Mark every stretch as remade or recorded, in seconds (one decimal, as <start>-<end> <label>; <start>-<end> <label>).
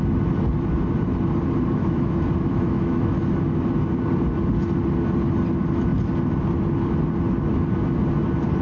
0.0-1.8 recorded; 1.8-3.1 remade; 3.1-8.6 recorded